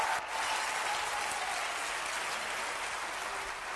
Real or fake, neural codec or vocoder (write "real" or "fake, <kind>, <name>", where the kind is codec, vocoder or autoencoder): real